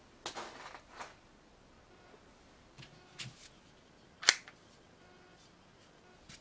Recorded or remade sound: recorded